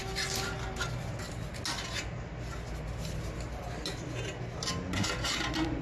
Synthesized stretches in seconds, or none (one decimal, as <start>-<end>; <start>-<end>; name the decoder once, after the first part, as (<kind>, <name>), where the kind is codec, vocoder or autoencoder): none